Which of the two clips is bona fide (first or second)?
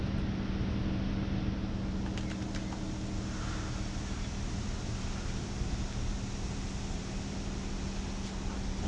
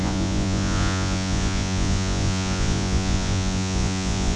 first